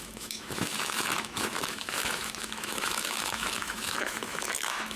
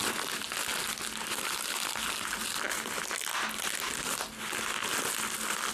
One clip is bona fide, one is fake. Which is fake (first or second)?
first